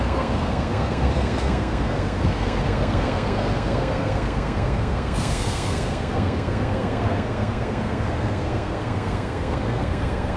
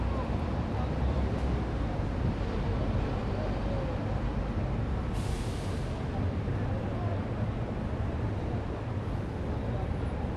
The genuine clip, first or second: second